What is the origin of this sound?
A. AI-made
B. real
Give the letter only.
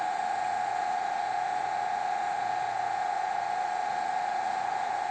A